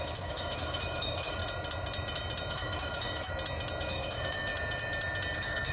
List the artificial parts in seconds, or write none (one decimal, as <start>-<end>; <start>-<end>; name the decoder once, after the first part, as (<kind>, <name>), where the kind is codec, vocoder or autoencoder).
0.0-1.4 (autoencoder, DAC-VAE); 2.5-3.3; 3.8-4.5; 5.3-5.7